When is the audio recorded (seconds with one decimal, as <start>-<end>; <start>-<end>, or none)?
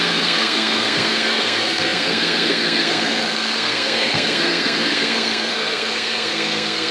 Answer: none